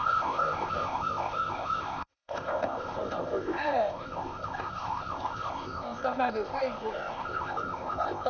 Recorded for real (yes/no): no